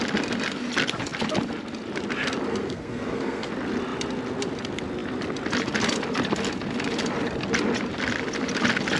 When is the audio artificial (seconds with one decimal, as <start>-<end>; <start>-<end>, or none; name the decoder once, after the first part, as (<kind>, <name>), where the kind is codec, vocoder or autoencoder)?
2.5-3.5 (codec, SNAC)